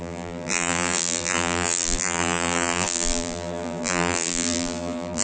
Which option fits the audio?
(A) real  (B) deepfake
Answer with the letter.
B